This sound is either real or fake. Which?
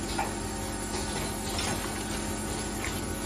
real